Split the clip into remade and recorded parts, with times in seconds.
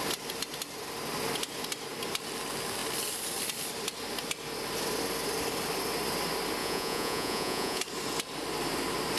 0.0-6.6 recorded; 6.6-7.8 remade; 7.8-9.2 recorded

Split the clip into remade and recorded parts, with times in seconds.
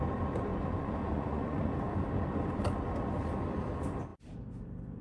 0.0-0.5 recorded; 0.5-1.7 remade; 1.7-5.0 recorded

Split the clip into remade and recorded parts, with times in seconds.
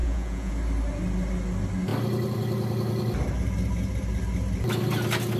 0.0-0.5 remade; 0.5-5.4 recorded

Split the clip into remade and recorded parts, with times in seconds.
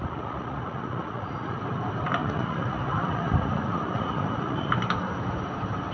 0.0-1.6 remade; 1.6-2.2 recorded; 2.2-4.7 remade; 4.7-5.9 recorded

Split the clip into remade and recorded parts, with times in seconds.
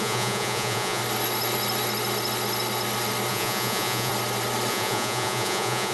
0.0-1.0 remade; 1.0-3.3 recorded; 3.3-4.1 remade; 4.1-4.7 recorded; 4.7-5.9 remade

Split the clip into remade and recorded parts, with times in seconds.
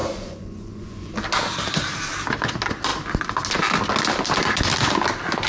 0.0-1.1 remade; 1.1-5.5 recorded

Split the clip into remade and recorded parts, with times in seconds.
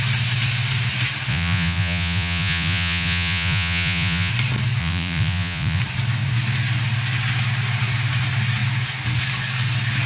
0.0-1.3 recorded; 1.3-4.3 remade; 4.3-4.8 recorded; 4.8-5.8 remade; 5.8-10.1 recorded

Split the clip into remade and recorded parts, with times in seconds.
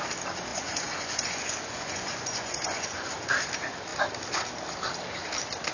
0.0-0.5 recorded; 0.5-3.1 remade; 3.1-5.7 recorded